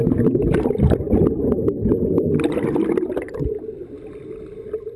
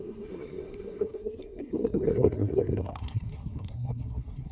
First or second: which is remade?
second